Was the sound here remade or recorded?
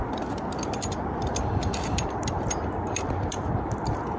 remade